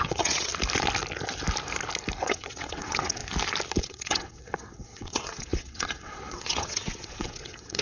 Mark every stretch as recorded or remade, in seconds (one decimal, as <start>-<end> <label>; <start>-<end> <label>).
0.0-0.5 remade; 0.5-2.2 recorded; 2.2-3.2 remade; 3.2-3.8 recorded; 3.8-7.8 remade